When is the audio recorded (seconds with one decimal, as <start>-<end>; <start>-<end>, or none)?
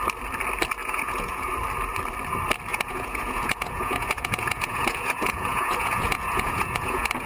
0.0-0.8; 1.5-2.7